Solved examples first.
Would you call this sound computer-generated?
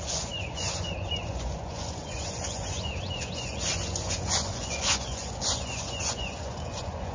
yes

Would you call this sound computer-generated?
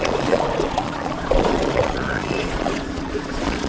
yes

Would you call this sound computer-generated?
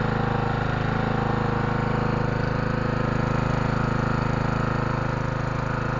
no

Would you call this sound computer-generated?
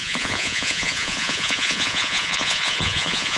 yes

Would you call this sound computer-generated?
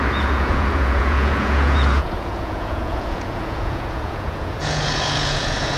yes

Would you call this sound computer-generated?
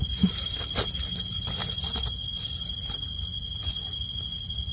no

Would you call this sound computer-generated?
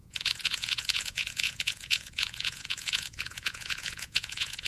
yes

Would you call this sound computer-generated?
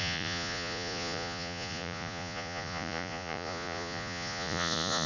yes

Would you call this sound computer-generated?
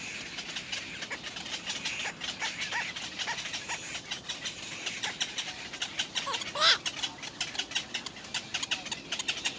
no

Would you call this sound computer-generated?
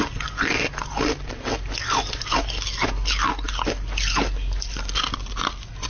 no